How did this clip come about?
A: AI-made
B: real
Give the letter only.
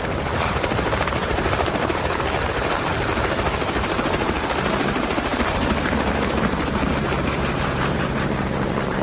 A